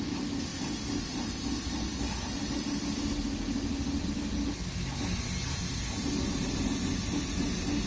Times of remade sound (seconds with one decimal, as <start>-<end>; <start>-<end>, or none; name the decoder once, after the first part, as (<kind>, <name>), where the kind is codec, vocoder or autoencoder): 0.5-3.1 (vocoder, BigVGAN v2)